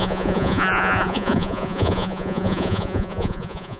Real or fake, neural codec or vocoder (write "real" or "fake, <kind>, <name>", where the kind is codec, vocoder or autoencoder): fake, vocoder, Vocos